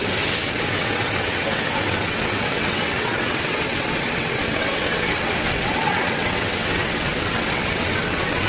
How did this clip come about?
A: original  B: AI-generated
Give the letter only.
B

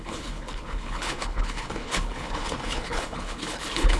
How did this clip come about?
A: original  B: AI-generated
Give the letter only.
B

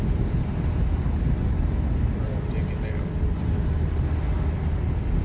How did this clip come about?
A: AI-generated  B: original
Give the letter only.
B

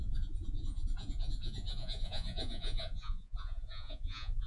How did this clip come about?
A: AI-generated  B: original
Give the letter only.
A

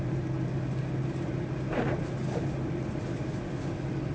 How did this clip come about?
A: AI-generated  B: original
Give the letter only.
B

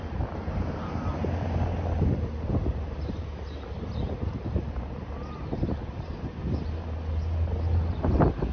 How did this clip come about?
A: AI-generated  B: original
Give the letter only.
B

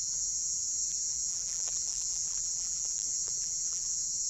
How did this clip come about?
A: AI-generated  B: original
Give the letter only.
A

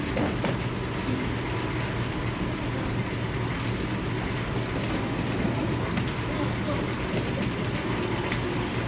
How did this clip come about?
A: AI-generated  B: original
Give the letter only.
B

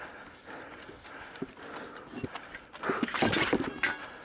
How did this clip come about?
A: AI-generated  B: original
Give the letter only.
B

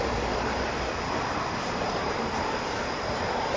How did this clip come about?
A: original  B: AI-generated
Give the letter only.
B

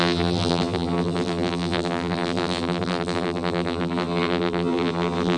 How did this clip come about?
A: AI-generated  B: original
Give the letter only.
A